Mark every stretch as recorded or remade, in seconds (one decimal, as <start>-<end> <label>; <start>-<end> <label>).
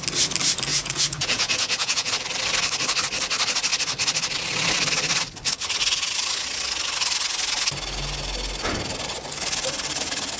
0.0-0.7 recorded; 0.7-2.1 remade; 2.1-10.4 recorded